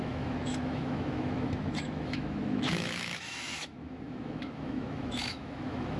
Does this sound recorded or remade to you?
remade